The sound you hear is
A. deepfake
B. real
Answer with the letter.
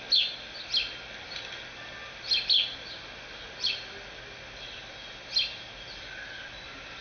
B